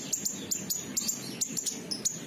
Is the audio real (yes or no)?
yes